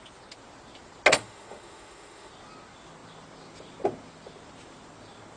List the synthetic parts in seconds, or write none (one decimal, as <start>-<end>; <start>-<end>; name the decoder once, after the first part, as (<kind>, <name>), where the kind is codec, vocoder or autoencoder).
1.1-2.3 (autoencoder, DAC-VAE)